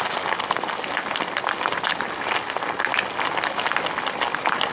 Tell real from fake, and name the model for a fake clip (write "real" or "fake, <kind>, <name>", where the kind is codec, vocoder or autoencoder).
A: real